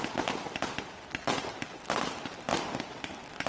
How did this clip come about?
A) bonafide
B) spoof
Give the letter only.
A